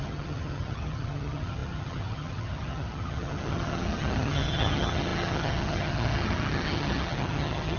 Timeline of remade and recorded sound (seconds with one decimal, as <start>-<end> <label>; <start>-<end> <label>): 0.0-7.8 remade